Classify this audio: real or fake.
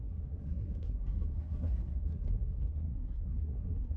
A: fake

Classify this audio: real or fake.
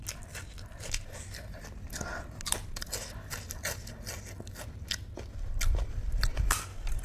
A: real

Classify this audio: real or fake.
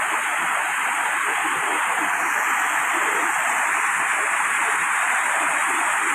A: real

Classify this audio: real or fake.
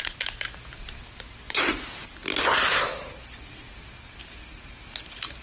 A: real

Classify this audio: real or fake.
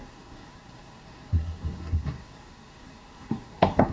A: fake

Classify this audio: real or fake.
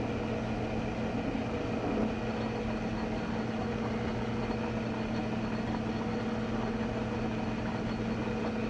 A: real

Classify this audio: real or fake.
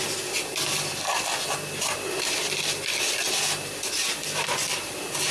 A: real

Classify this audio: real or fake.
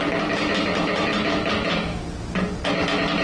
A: real